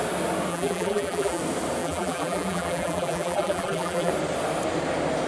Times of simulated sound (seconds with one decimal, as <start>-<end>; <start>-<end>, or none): 0.5-1.4; 1.8-4.1